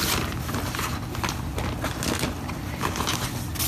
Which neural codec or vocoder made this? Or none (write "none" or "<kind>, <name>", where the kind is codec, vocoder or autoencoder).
none